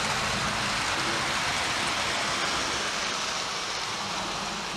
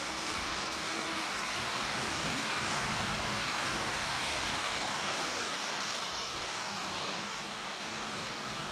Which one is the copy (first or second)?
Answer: second